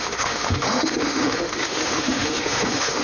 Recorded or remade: remade